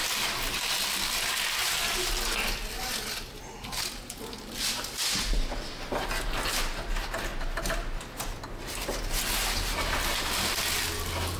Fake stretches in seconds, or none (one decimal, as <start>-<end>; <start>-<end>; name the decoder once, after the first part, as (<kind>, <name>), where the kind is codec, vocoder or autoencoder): none